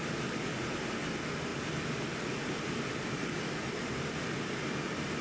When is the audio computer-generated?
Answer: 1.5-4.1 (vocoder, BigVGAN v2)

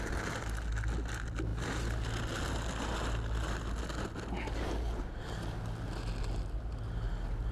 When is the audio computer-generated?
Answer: none

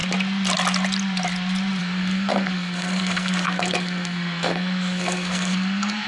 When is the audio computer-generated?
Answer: 1.8-6.1 (codec, SNAC)

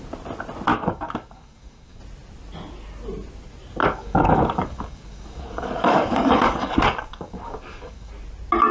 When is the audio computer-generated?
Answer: 0.7-2.0 (codec, DAC); 3.8-8.1